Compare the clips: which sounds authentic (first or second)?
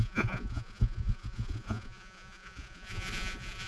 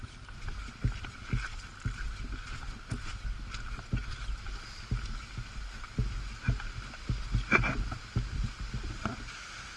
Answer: second